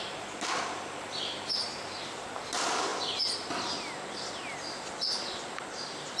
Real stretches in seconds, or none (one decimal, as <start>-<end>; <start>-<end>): 0.0-1.7; 2.5-6.2